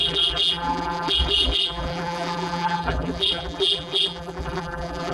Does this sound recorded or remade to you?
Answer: remade